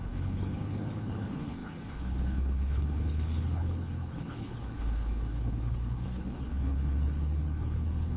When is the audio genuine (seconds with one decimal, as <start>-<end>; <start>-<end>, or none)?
none